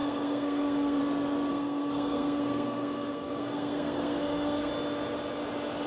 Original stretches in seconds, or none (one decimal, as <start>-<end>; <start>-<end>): 1.0-1.5; 4.7-5.9